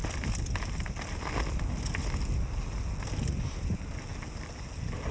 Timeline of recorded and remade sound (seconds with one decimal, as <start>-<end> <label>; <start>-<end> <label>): 0.0-5.1 recorded